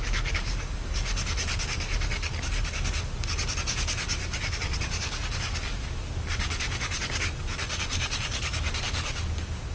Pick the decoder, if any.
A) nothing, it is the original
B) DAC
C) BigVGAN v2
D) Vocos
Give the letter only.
B